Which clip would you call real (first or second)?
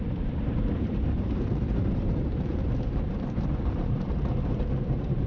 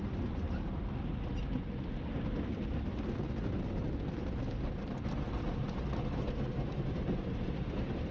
second